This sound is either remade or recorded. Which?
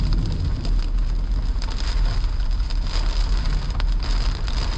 recorded